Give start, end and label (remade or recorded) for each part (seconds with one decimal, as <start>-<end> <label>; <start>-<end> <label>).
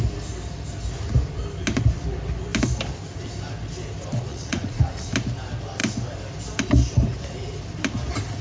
0.0-4.3 recorded; 4.3-5.1 remade; 5.1-8.4 recorded